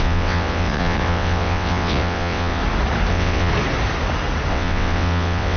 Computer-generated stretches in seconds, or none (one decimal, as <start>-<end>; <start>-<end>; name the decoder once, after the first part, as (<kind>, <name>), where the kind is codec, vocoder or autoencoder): 0.0-2.6 (vocoder, WaveNeXt); 3.1-3.5; 4.5-5.6